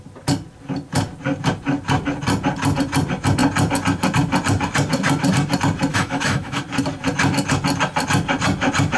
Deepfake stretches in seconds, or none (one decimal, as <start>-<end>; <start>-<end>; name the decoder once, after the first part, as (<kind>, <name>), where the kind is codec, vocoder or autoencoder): 5.9-6.6 (autoencoder, DAC-VAE)